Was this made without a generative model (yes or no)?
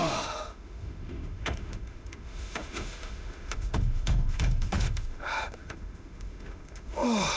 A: no